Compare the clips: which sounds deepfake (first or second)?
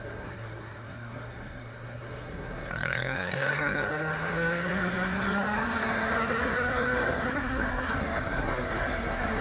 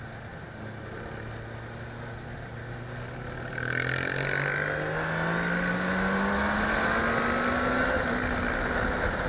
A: first